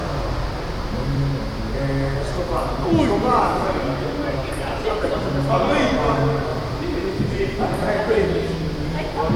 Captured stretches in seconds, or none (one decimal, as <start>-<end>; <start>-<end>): 1.2-6.5; 7.2-9.4